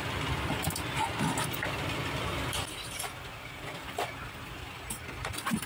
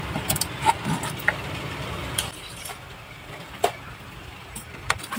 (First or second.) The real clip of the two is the first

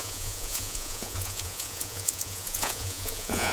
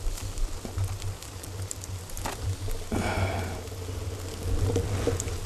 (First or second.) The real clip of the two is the second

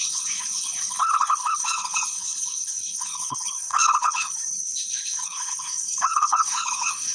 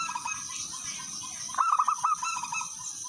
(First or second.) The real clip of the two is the second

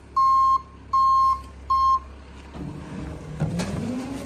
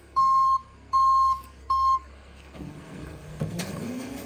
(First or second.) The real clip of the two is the first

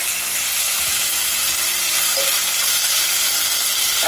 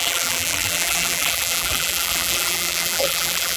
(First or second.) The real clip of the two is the first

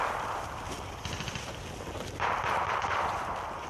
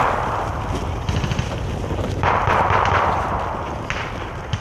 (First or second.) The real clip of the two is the second